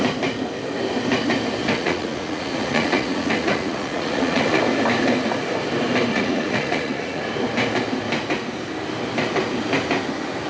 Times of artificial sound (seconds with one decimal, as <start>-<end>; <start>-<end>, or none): 1.6-4.6; 6.1-7.2